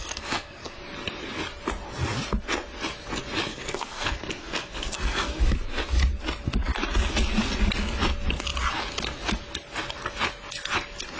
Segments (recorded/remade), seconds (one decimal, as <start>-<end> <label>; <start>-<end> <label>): 0.0-0.8 remade; 0.8-3.5 recorded; 3.5-5.4 remade; 5.4-11.2 recorded